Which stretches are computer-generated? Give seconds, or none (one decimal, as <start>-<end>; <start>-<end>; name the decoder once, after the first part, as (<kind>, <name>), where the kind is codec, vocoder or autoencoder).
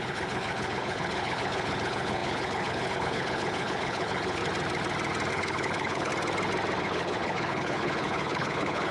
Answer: 0.0-4.4 (codec, HILCodec); 5.3-6.1; 6.8-8.9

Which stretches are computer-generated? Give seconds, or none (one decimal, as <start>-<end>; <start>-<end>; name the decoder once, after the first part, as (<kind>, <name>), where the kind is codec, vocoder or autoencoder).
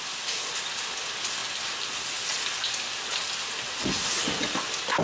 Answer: none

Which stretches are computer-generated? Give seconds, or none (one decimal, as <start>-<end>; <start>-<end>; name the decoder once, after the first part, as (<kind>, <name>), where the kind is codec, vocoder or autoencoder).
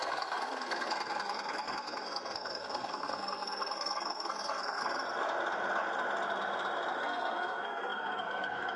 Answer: 0.0-4.8 (codec, SNAC); 7.0-8.8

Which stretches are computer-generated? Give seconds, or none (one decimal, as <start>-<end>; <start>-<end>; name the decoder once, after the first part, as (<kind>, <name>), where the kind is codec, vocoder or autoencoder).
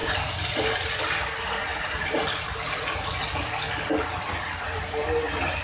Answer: 0.0-1.0 (vocoder, BigVGAN v2)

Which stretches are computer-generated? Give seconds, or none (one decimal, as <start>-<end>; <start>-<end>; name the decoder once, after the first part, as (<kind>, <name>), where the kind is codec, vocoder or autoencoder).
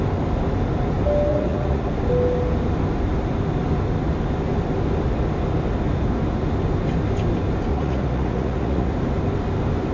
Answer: 1.3-1.9 (vocoder, Vocos); 7.7-8.9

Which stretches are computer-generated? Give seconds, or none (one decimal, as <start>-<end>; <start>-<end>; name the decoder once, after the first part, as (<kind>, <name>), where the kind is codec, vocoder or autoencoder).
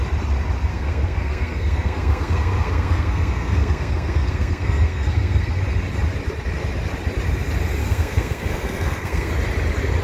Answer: 0.7-5.6 (codec, SNAC); 7.8-9.3